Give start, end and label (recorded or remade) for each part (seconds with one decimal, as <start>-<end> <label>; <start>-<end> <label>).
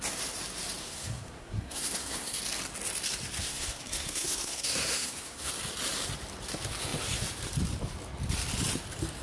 0.0-0.8 recorded; 0.8-2.4 remade; 2.4-3.4 recorded; 3.4-5.5 remade; 5.5-9.2 recorded